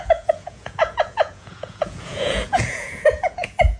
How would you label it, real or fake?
fake